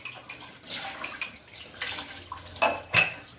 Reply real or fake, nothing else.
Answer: real